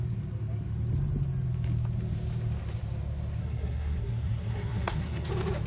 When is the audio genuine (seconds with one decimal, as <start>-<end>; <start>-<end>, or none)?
0.0-3.4; 5.3-5.7